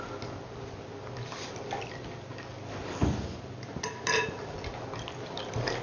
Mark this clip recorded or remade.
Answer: recorded